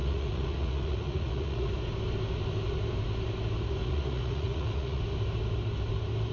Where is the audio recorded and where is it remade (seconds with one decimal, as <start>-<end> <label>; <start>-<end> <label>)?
0.0-1.7 remade; 1.7-3.8 recorded; 3.8-5.0 remade; 5.0-6.3 recorded